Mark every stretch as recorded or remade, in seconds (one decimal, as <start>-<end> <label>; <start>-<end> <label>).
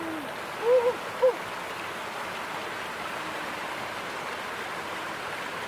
0.0-2.0 recorded; 2.0-5.7 remade